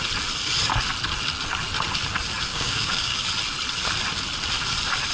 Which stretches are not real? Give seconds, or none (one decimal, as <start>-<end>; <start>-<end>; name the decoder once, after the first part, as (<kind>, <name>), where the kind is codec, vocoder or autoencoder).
2.5-3.2 (codec, DAC)